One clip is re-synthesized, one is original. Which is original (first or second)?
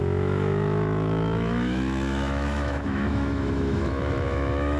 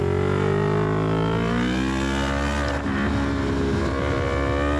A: second